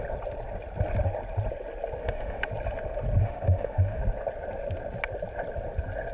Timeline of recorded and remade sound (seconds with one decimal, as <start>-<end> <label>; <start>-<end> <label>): 0.0-2.0 recorded; 2.0-2.5 remade; 2.5-3.2 recorded; 3.2-4.0 remade; 4.0-6.1 recorded